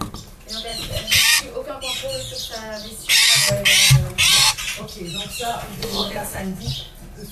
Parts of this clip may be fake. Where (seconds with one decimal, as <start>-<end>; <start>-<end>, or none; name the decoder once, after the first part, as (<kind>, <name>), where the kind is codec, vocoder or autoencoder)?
5.7-6.6 (codec, SNAC)